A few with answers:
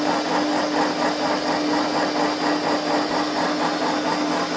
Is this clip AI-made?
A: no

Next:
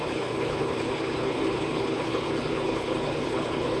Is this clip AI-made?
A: yes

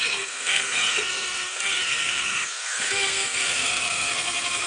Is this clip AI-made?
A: yes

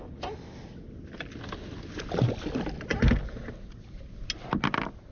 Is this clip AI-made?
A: no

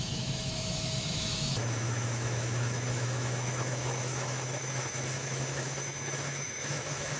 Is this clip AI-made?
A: yes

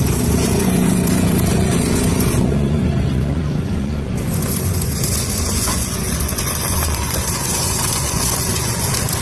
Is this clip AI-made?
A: yes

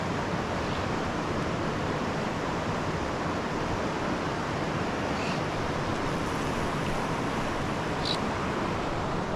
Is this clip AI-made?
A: no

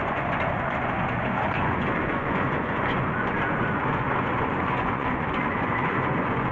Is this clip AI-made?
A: yes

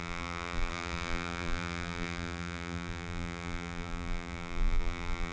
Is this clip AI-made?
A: yes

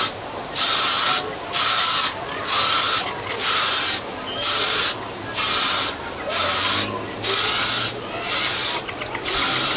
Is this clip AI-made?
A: no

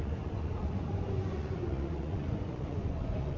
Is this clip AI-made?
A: yes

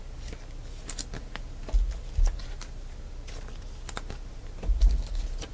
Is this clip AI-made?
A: no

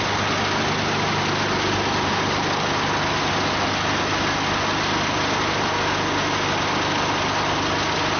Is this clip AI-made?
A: no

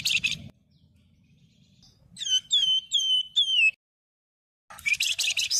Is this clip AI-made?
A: no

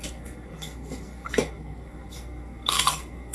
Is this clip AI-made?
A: yes